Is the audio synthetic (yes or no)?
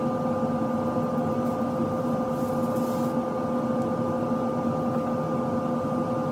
no